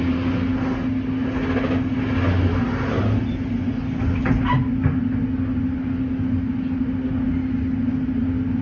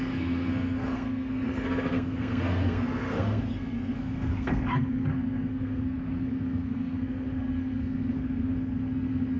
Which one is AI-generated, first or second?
second